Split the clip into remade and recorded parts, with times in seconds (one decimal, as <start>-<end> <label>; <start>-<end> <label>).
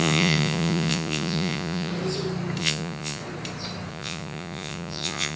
0.0-1.9 remade; 1.9-2.6 recorded; 2.6-3.2 remade; 3.2-3.9 recorded; 3.9-5.4 remade